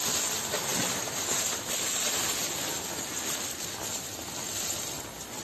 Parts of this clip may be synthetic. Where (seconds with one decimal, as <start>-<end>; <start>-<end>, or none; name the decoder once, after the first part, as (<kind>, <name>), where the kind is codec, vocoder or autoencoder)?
0.0-0.7 (vocoder, BigVGAN v2); 3.9-5.4